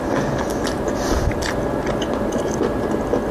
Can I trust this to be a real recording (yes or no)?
yes